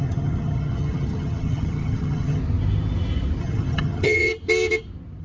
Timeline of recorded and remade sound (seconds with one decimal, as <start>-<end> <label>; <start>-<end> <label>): 0.0-2.4 remade; 2.4-3.4 recorded; 3.4-4.3 remade; 4.3-5.2 recorded